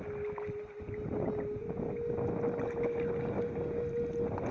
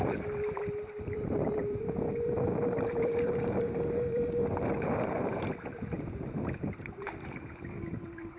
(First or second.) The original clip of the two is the first